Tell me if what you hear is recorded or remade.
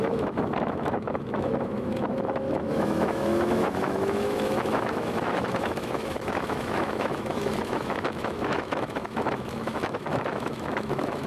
remade